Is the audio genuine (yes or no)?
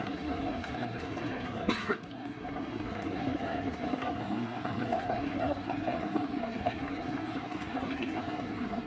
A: no